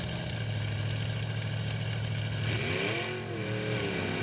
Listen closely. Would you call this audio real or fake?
real